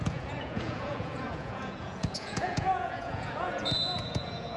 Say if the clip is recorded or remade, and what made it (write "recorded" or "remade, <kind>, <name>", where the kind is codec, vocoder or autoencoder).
remade, vocoder, Vocos